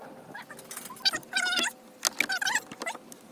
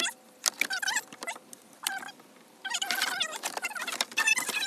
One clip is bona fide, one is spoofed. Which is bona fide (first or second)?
first